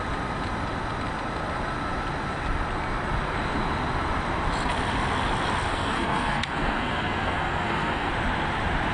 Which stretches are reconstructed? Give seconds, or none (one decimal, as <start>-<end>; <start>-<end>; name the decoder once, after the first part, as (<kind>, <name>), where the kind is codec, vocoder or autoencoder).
5.7-8.1 (codec, SNAC)